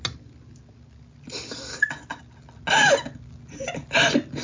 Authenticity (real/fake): real